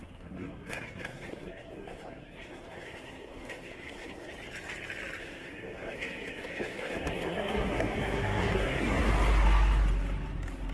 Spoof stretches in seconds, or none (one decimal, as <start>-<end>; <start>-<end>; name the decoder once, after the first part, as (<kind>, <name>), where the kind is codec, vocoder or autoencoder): 0.0-4.3 (codec, SNAC); 5.2-9.1